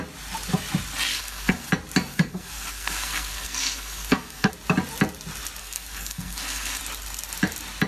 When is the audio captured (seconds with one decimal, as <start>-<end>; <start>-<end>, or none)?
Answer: 0.0-1.1; 1.7-2.1; 4.5-5.6; 6.8-7.9